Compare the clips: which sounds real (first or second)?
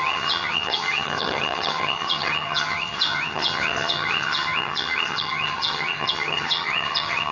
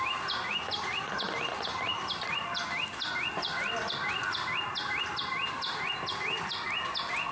second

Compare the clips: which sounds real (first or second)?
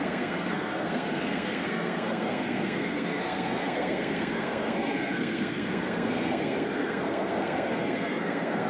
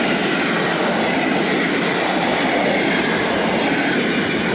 second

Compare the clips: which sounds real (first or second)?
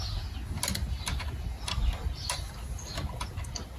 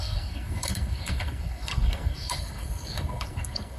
first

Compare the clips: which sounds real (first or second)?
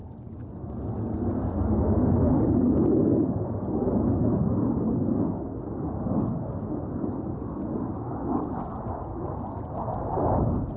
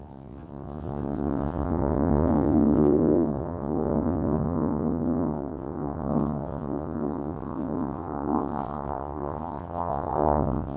first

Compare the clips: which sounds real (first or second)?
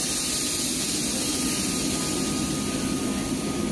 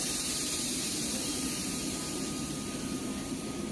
first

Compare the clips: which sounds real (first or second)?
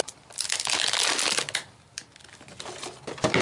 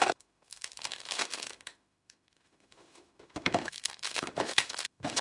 first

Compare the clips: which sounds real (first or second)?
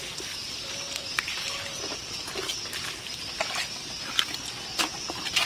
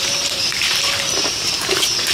first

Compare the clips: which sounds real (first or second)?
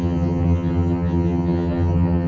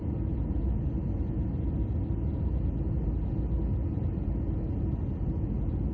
second